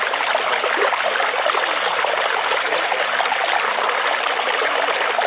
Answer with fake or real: real